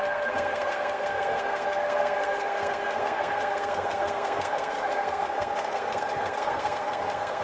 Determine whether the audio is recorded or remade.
remade